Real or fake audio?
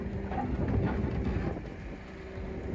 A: real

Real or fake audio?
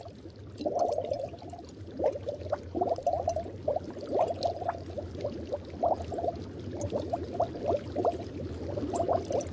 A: real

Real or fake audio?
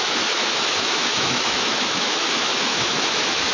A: fake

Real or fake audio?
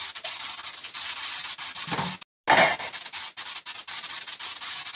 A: real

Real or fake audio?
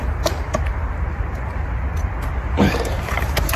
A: real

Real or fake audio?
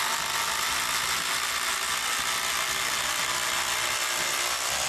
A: real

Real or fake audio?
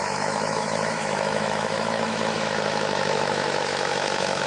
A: fake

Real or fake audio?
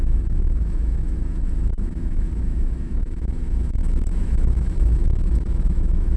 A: fake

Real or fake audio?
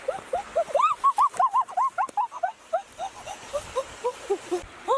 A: real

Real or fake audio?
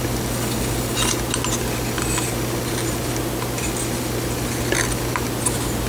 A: real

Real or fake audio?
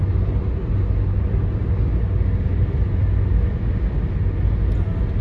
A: real